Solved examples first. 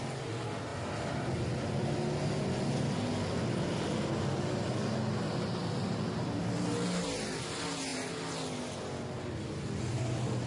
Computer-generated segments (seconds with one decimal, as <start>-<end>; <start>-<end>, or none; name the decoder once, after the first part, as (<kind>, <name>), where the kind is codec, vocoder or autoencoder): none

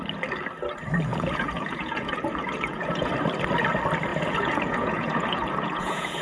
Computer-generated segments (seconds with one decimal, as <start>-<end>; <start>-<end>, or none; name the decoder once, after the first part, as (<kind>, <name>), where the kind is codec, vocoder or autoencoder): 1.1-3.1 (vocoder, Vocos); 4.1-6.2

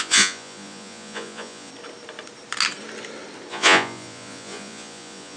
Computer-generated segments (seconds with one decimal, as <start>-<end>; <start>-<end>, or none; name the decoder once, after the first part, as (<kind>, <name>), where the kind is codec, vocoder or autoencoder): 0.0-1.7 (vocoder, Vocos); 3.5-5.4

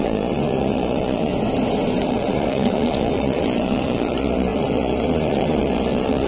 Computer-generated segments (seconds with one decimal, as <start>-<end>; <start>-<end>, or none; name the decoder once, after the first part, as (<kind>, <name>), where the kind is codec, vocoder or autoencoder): 0.0-1.3 (vocoder, Vocos); 2.0-6.3

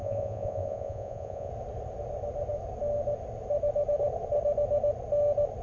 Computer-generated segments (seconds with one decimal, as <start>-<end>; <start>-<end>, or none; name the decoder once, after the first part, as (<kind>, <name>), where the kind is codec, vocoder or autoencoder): 0.0-1.5 (vocoder, Vocos)